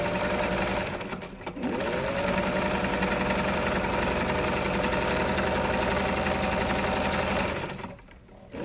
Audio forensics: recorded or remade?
recorded